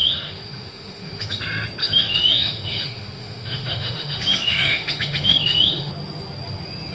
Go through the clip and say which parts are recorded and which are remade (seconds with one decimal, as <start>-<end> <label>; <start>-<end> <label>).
0.0-1.4 remade; 1.4-1.8 recorded; 1.8-5.9 remade; 5.9-6.9 recorded

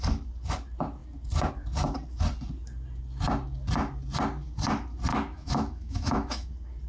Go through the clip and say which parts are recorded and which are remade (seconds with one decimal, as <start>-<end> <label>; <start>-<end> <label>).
0.0-5.1 recorded; 5.1-6.5 remade; 6.5-6.9 recorded

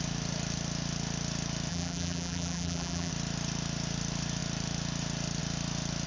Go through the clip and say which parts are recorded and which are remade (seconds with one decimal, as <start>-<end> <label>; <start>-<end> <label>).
0.0-1.7 recorded; 1.7-3.1 remade; 3.1-6.1 recorded

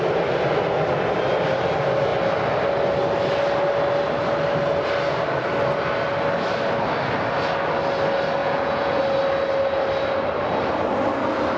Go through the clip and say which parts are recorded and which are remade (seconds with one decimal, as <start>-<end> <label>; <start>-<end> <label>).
0.0-8.4 recorded; 8.4-9.0 remade; 9.0-11.6 recorded